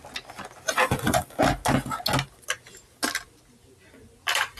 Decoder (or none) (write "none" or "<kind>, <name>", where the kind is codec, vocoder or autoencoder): none